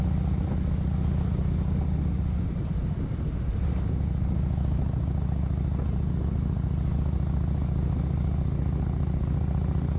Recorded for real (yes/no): yes